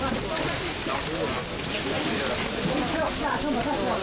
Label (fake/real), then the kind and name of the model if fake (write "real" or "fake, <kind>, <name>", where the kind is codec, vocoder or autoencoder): real